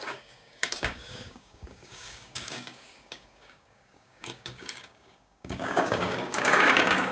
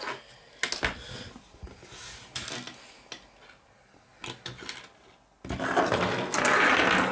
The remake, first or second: first